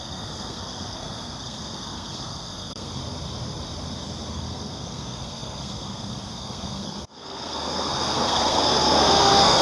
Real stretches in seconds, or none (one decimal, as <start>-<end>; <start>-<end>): 3.0-4.3